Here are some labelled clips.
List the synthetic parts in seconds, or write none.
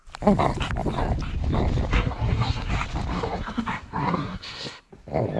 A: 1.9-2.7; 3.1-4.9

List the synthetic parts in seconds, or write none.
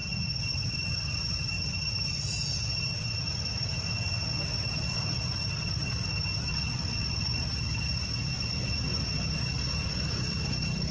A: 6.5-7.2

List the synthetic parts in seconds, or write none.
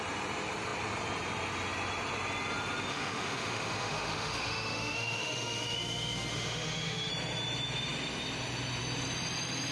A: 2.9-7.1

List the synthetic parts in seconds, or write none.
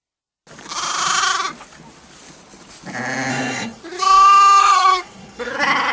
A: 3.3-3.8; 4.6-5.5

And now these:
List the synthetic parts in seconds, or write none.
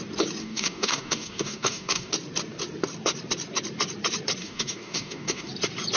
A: 0.4-2.1; 4.4-5.5